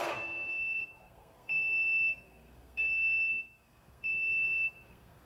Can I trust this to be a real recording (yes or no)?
no